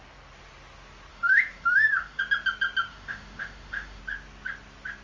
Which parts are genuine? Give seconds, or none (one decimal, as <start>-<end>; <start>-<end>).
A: 0.0-1.1; 2.2-2.9; 4.0-5.0